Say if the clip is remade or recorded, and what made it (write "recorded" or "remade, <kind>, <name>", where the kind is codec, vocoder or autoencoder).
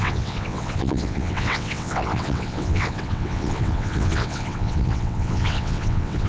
remade, vocoder, WaveNeXt